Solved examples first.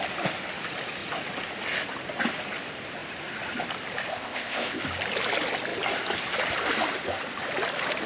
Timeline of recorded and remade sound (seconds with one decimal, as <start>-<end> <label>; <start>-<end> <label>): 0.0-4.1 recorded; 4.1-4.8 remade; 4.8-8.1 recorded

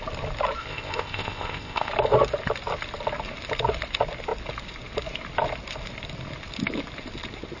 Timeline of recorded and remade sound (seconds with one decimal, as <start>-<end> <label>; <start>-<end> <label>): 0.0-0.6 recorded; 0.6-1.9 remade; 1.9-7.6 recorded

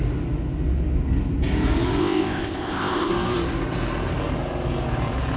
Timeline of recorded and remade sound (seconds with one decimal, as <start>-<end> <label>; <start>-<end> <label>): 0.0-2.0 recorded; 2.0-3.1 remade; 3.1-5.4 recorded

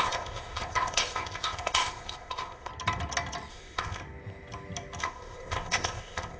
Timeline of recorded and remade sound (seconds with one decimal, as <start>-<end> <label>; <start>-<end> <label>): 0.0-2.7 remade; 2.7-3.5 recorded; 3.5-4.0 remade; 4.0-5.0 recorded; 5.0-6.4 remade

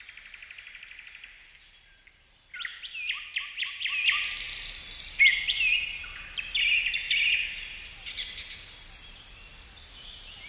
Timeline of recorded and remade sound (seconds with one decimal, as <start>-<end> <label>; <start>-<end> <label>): 0.0-10.5 recorded

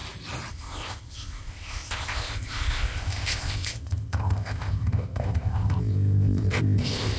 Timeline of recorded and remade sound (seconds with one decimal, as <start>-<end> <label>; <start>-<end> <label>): 0.0-0.5 recorded; 0.5-7.2 remade

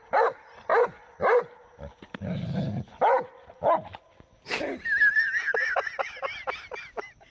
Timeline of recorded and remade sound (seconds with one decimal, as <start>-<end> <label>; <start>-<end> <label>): 0.0-7.3 recorded